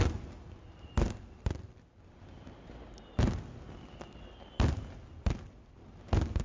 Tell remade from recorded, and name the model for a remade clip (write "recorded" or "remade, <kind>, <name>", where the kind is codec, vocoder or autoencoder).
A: recorded